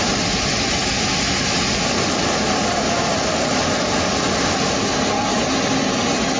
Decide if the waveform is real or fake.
real